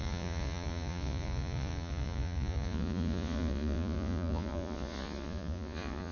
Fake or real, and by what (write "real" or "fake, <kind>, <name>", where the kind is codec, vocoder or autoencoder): fake, vocoder, Vocos